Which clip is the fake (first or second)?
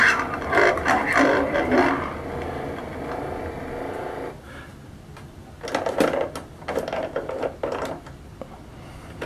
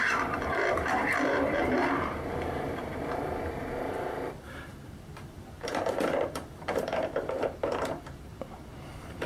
second